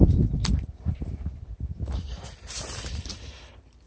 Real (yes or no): no